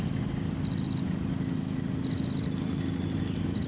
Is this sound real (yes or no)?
yes